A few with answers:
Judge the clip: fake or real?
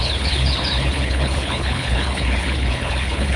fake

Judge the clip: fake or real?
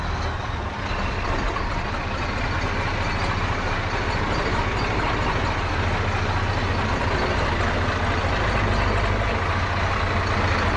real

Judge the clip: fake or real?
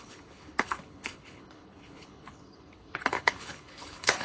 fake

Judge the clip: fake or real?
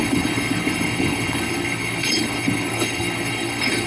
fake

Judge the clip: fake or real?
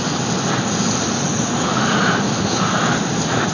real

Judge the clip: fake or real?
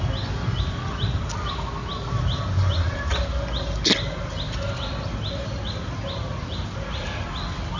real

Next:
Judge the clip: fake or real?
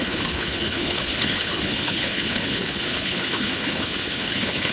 fake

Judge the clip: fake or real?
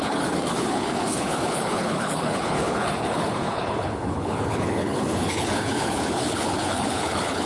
fake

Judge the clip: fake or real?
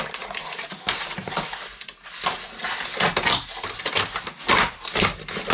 real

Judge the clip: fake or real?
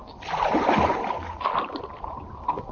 real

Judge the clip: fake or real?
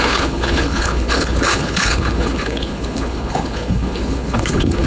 fake